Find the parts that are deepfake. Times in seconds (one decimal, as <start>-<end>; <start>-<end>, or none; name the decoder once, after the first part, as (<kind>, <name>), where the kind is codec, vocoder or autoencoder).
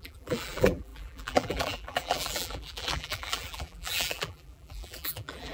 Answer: 0.0-5.5 (vocoder, BigVGAN v2)